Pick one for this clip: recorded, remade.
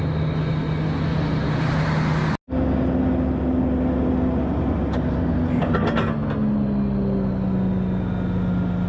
recorded